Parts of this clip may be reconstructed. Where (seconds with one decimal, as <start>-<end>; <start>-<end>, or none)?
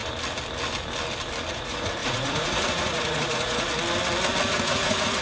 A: 1.5-3.7; 4.5-5.2